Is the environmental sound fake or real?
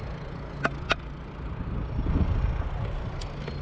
real